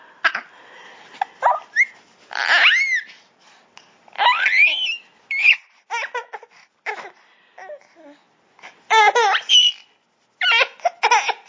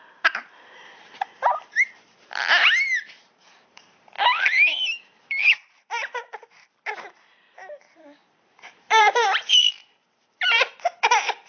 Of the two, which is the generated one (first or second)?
second